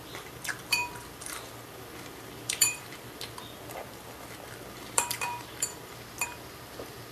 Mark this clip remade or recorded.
remade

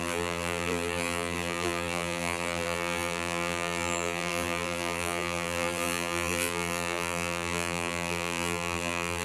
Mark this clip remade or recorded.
remade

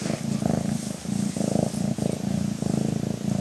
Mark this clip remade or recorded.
recorded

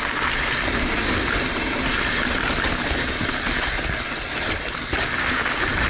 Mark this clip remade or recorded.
recorded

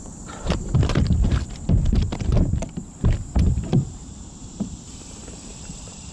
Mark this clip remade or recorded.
remade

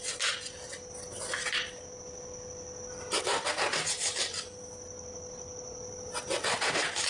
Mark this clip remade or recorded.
recorded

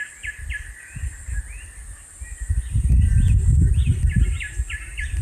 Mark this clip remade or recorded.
remade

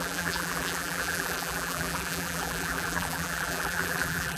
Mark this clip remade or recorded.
remade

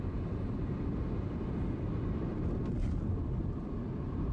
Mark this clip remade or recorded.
remade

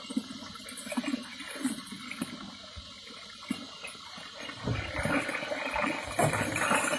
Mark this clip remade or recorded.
recorded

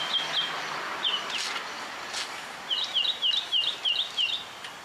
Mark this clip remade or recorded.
recorded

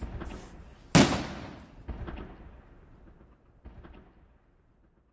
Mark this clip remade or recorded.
recorded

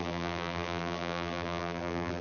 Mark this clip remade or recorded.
remade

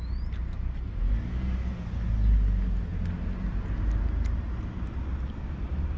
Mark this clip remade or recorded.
recorded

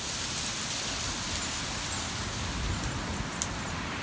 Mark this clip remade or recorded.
recorded